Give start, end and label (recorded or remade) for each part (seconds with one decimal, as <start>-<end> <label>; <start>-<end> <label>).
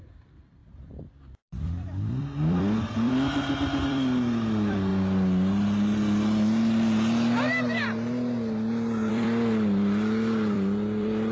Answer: 0.0-4.9 remade; 4.9-9.1 recorded; 9.1-11.3 remade